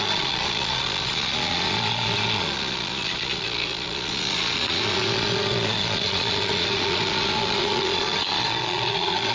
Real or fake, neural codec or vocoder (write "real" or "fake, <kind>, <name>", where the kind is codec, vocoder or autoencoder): fake, vocoder, Vocos